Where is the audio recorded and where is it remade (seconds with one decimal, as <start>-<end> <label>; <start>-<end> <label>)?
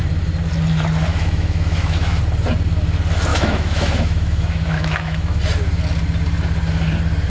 0.0-1.1 recorded; 1.1-2.2 remade; 2.2-3.3 recorded; 3.3-5.4 remade; 5.4-7.3 recorded